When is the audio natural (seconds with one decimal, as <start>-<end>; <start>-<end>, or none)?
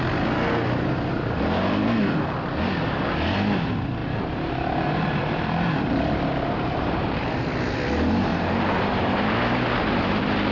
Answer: 0.0-4.0; 7.3-8.3; 9.3-10.5